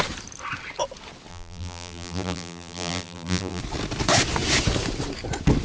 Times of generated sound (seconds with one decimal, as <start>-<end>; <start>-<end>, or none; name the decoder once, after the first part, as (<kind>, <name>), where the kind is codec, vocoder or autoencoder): 1.3-3.6 (vocoder, BigVGAN v2)